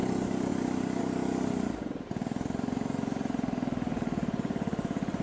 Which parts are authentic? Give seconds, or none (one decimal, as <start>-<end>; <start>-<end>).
0.0-5.2